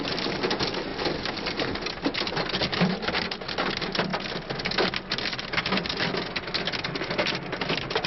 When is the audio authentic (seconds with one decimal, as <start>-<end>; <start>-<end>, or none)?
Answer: 0.0-8.1